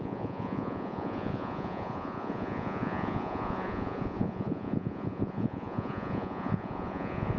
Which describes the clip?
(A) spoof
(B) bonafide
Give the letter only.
A